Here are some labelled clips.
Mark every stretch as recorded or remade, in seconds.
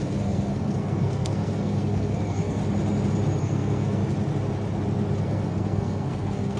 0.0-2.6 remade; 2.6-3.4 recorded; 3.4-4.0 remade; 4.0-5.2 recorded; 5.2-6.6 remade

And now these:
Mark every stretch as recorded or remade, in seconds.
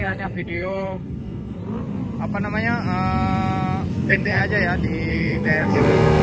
0.0-1.6 remade; 1.6-3.9 recorded; 3.9-4.4 remade; 4.4-5.1 recorded; 5.1-6.2 remade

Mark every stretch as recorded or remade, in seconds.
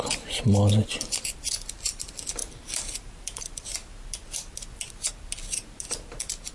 0.0-6.5 recorded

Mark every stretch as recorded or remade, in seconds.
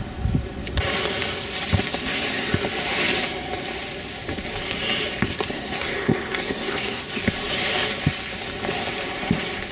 0.0-2.0 recorded; 2.0-2.5 remade; 2.5-5.5 recorded; 5.5-7.0 remade; 7.0-9.7 recorded